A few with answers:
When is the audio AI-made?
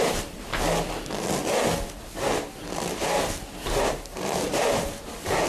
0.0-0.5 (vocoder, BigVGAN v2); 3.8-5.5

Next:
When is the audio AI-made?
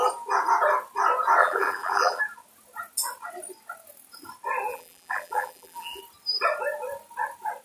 1.4-2.2 (vocoder, BigVGAN v2); 4.7-6.0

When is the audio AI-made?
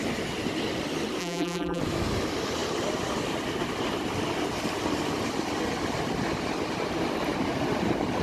1.2-1.8 (vocoder, BigVGAN v2)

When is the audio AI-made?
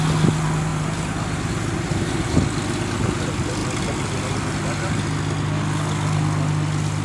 0.7-2.4 (vocoder, BigVGAN v2)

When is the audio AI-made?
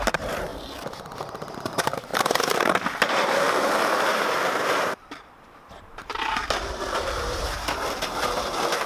0.0-0.5 (vocoder, BigVGAN v2); 1.2-8.9